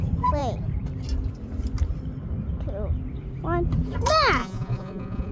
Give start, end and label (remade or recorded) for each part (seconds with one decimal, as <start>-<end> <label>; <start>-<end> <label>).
0.0-4.4 recorded; 4.4-5.3 remade